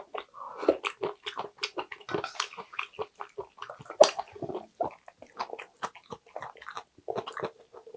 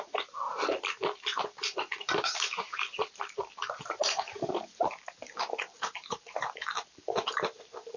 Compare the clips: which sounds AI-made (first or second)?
second